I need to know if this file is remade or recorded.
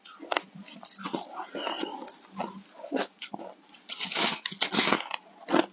recorded